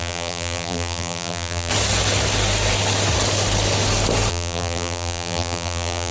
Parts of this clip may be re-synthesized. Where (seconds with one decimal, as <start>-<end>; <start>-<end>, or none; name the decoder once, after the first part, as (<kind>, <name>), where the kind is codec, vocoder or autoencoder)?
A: 0.0-1.7 (vocoder, BigVGAN v2); 4.3-6.1